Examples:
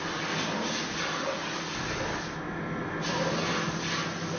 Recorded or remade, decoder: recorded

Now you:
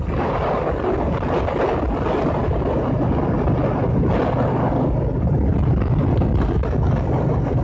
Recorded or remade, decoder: recorded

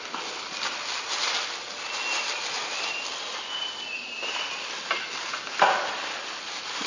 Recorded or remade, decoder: recorded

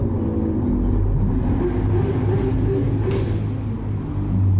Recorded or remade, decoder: recorded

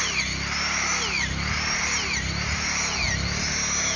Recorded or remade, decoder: recorded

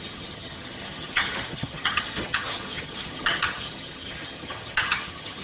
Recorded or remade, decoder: remade, vocoder, HiFi-GAN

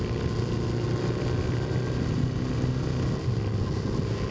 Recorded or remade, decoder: recorded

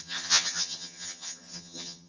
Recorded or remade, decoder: remade, vocoder, HiFi-GAN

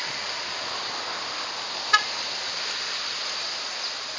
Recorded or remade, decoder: recorded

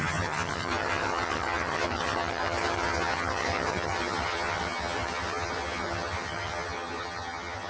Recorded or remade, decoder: remade, vocoder, HiFi-GAN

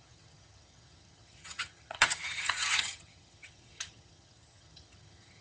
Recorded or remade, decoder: remade, vocoder, HiFi-GAN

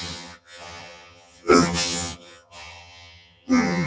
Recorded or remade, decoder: remade, vocoder, HiFi-GAN